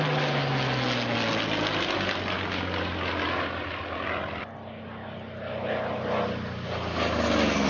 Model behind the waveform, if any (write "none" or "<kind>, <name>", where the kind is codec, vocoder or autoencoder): none